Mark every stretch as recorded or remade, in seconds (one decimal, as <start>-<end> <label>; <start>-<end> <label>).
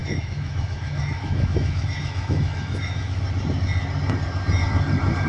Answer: 0.0-3.2 remade; 3.2-5.3 recorded